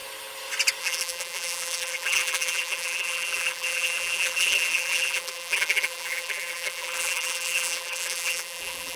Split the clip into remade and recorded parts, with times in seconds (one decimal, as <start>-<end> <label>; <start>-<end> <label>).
0.0-0.8 recorded; 0.8-9.0 remade